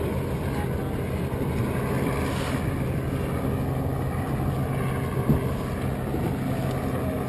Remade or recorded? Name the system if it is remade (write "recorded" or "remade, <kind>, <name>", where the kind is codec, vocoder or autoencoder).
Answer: recorded